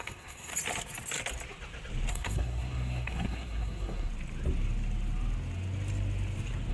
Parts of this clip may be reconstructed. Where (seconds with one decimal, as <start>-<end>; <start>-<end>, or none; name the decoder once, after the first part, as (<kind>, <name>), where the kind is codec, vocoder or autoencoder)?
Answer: 0.0-0.5 (codec, SNAC); 2.1-4.1